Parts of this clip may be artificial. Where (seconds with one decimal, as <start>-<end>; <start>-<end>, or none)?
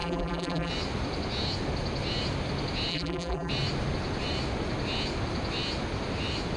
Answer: 0.0-0.7; 2.9-3.5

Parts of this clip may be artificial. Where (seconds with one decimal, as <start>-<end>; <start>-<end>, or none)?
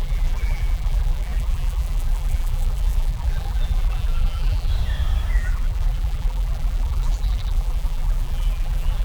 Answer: 0.0-4.7; 5.3-9.0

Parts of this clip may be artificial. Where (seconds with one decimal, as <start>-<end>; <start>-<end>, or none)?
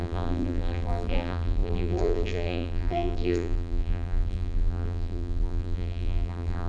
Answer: 0.0-6.7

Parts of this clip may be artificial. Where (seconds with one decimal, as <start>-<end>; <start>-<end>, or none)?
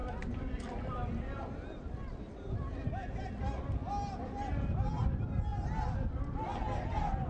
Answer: 0.0-0.8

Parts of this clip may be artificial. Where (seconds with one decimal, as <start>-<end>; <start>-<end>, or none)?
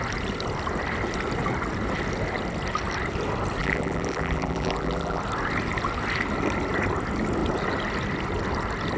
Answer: 3.6-5.2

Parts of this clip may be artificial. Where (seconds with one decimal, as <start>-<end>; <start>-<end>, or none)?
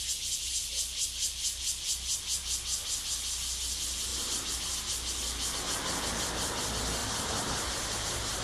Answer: 4.1-4.8; 7.0-8.4